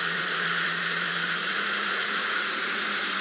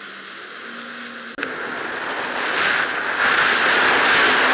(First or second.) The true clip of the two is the second